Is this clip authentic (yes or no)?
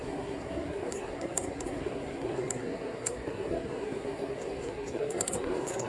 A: no